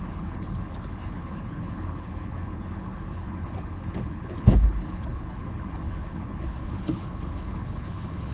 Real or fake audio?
fake